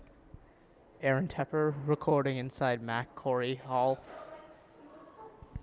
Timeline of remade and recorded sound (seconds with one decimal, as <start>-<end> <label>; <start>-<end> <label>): 0.0-5.6 recorded